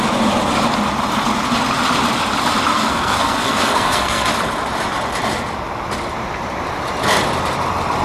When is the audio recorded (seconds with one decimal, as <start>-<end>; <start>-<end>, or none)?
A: 0.0-2.7; 4.3-8.0